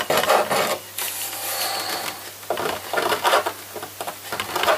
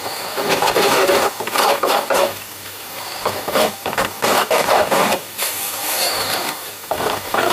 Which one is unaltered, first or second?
first